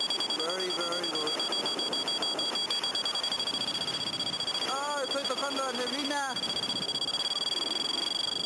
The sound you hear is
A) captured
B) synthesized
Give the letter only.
A